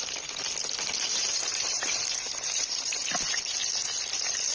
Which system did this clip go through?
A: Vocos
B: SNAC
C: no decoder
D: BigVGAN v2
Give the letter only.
C